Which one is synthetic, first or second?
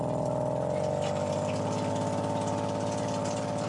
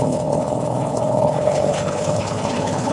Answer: second